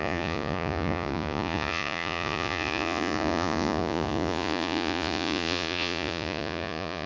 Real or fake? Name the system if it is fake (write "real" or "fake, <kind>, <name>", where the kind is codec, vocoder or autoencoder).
fake, vocoder, Vocos